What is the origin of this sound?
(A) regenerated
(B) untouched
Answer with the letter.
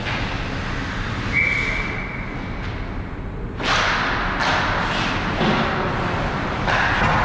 B